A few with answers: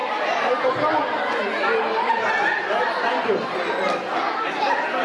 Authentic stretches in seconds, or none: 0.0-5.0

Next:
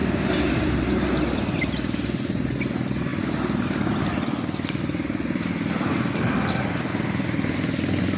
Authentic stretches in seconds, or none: 0.0-8.2